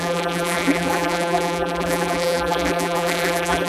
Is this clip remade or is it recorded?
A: remade